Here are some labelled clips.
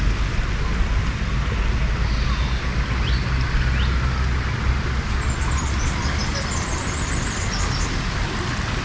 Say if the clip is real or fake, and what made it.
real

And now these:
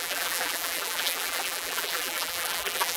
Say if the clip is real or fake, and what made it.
fake, vocoder, BigVGAN v2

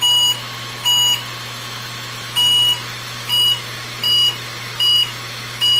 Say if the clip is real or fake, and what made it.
fake, autoencoder, DAC-VAE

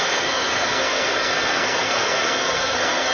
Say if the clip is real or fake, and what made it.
fake, codec, SNAC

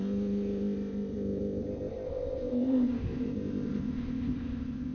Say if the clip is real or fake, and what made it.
fake, codec, ZipCodec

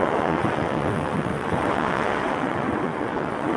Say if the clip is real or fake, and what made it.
fake, vocoder, WaveNeXt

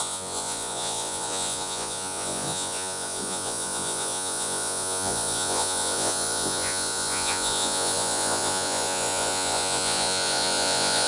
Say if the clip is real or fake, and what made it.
fake, vocoder, Vocos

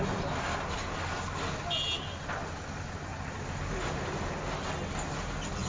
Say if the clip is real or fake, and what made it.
real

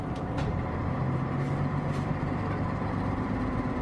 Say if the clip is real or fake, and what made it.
fake, vocoder, BigVGAN v2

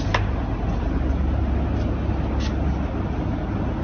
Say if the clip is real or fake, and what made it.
real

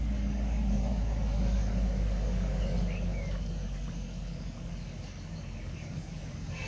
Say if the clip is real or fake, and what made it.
fake, codec, DAC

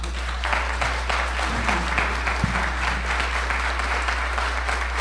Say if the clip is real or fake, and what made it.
real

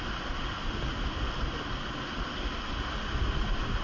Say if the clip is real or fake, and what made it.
real